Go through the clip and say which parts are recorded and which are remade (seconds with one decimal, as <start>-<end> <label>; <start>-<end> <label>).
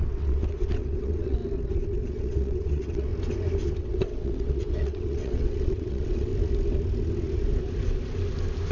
0.0-1.4 remade; 1.4-2.1 recorded; 2.1-3.1 remade; 3.1-3.8 recorded; 3.8-6.3 remade; 6.3-8.7 recorded